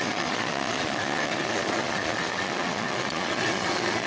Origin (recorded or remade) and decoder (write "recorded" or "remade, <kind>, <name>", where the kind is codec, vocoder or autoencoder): remade, vocoder, Vocos